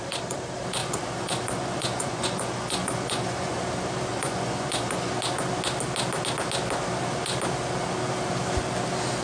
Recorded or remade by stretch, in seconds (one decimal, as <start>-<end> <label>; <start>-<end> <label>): 0.0-0.8 recorded; 0.8-3.5 remade; 3.5-4.1 recorded; 4.1-5.1 remade; 5.1-9.2 recorded